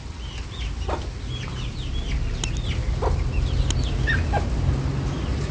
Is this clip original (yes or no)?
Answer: yes